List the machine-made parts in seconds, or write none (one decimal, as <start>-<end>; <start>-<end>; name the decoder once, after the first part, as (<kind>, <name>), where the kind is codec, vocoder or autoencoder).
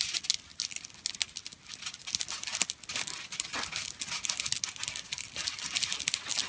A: none